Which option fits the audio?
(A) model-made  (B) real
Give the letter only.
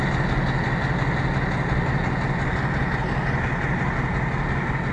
B